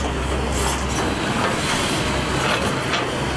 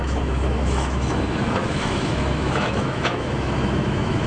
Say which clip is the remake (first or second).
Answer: second